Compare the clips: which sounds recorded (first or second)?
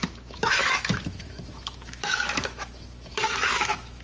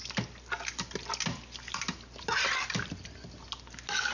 second